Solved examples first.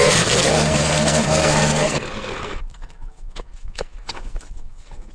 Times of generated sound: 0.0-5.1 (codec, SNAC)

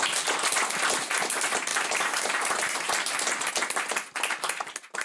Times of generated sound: 1.7-3.5 (vocoder, BigVGAN v2)

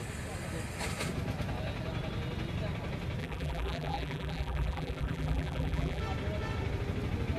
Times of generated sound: 3.2-6.0 (vocoder, BigVGAN v2)

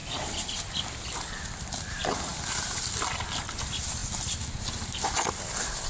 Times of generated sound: none

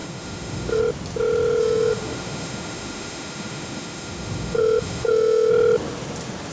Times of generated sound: 0.0-0.8 (autoencoder, DAC-VAE); 1.6-5.5

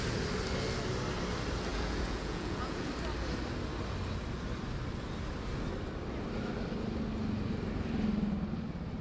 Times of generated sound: 1.7-2.9 (vocoder, Vocos)

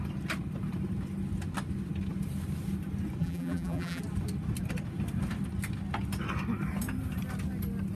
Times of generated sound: 3.2-4.0 (vocoder, BigVGAN v2)

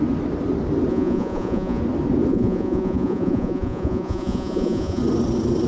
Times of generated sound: 0.9-1.8 (vocoder, Vocos); 2.3-5.0